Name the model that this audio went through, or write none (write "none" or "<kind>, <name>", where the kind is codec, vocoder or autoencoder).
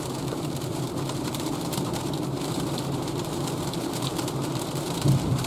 vocoder, BigVGAN v2